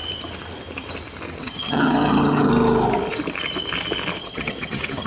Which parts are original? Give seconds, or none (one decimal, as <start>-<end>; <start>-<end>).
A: 0.0-1.4; 2.5-4.2

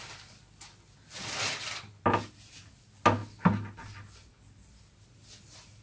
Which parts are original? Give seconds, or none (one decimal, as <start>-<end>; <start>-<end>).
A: 0.0-5.8

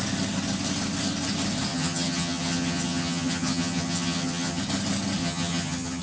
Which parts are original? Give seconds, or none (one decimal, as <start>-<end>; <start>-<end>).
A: 0.0-1.7; 4.6-5.2

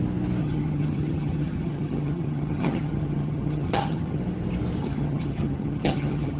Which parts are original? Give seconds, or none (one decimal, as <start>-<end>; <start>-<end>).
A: 0.0-0.4; 4.2-4.8

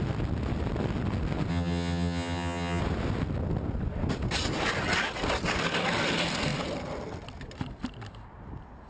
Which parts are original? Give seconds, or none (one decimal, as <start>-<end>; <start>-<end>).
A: 0.0-1.5; 2.8-8.9